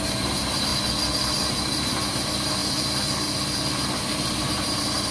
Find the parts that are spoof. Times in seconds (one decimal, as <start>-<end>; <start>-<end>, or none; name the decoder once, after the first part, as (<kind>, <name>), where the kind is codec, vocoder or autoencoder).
0.0-0.7 (vocoder, BigVGAN v2); 1.4-2.6; 4.1-5.1